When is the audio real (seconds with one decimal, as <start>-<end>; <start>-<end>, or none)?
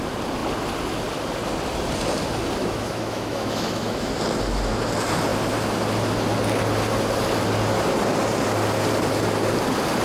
0.0-2.6; 4.1-10.0